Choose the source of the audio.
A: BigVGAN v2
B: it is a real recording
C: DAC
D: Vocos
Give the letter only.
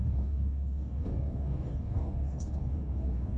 C